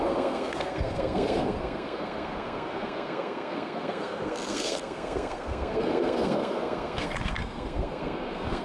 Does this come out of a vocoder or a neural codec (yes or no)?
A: yes